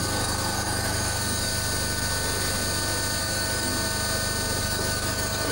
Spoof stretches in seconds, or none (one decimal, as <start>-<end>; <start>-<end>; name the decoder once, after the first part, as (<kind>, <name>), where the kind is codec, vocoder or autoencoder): 0.0-1.5 (codec, DAC); 3.2-3.7; 4.6-5.5